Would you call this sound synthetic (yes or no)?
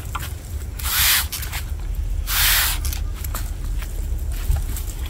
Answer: no